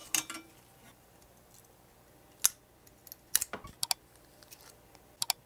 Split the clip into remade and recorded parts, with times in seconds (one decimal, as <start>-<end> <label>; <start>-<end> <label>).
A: 0.0-5.5 recorded